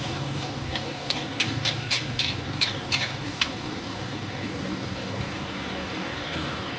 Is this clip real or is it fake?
fake